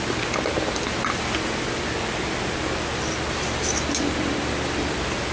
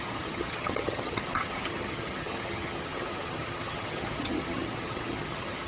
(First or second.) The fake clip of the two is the second